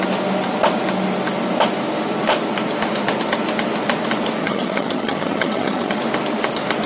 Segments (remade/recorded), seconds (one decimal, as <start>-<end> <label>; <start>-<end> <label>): 0.0-4.4 recorded; 4.4-5.9 remade; 5.9-6.9 recorded